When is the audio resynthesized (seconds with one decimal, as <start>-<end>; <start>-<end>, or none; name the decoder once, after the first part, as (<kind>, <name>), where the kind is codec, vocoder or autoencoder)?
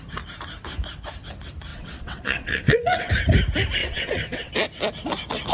1.7-3.1 (vocoder, WaveNeXt); 3.8-4.5